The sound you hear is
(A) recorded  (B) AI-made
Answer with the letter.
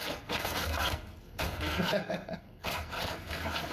B